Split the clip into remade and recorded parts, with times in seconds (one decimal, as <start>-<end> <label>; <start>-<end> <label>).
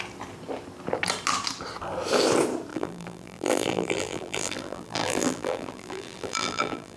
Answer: 0.0-2.7 recorded; 2.7-7.0 remade